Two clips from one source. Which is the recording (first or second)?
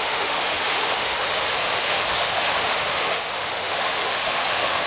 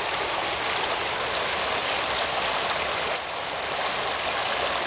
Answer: second